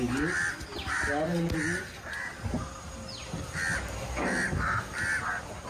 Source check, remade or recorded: recorded